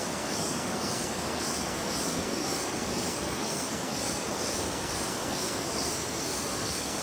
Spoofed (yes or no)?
yes